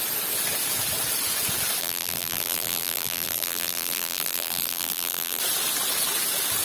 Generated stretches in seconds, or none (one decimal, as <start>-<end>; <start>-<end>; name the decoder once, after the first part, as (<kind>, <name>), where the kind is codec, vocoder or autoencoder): 1.8-5.4 (vocoder, BigVGAN v2)